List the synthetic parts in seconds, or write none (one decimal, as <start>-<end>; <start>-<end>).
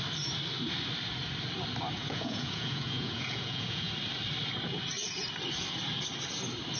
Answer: 2.0-3.9